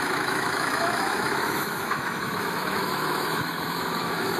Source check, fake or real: fake